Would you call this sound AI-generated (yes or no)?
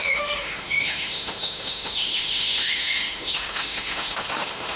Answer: yes